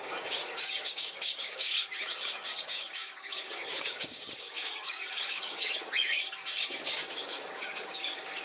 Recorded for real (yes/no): no